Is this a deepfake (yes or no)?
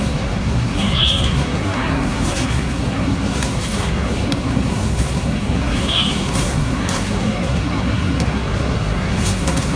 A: yes